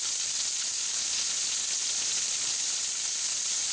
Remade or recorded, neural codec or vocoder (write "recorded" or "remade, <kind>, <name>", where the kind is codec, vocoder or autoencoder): recorded